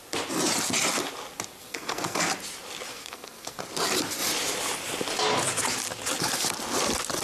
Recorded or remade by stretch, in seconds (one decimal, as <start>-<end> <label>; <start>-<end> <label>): 0.0-1.6 recorded; 1.6-2.2 remade; 2.2-2.9 recorded; 2.9-3.6 remade; 3.6-7.2 recorded